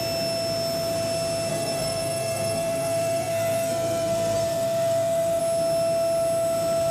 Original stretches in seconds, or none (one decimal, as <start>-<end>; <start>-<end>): 0.0-1.5; 5.4-6.9